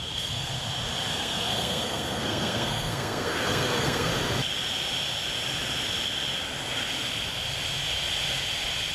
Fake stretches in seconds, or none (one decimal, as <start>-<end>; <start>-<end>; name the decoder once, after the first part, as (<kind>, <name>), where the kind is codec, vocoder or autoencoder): 0.0-0.5 (codec, SNAC); 1.1-4.1